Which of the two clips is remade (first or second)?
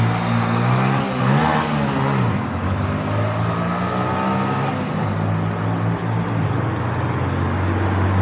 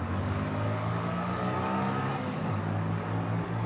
second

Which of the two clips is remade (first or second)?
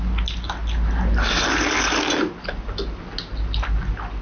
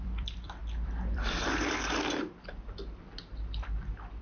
second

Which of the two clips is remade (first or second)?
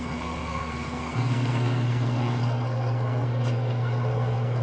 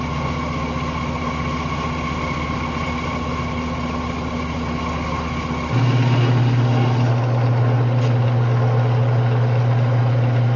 first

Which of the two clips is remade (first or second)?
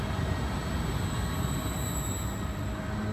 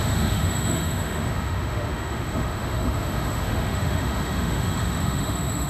second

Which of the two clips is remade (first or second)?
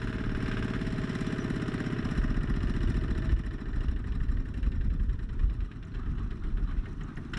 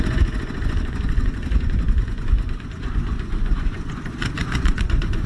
second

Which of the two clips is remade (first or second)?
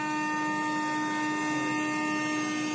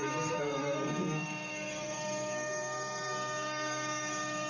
second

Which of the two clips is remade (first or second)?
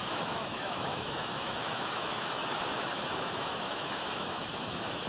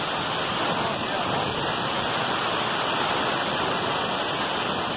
first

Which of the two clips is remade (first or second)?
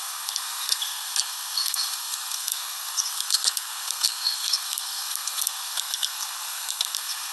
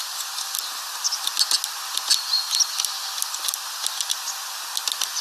first